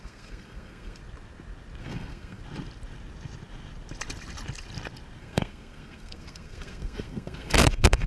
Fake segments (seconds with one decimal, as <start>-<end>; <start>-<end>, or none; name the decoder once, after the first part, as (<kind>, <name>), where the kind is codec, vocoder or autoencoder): 0.0-1.0 (codec, SNAC); 1.8-2.4; 5.2-8.1